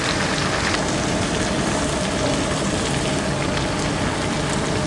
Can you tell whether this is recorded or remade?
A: recorded